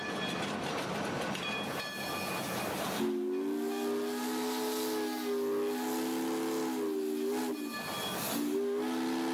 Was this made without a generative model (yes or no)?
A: yes